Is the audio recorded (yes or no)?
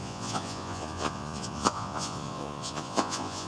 no